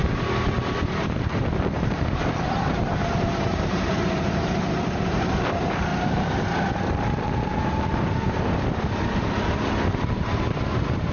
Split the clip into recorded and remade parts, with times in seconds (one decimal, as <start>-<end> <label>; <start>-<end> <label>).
0.0-1.0 recorded; 1.0-5.9 remade; 5.9-9.7 recorded; 9.7-11.1 remade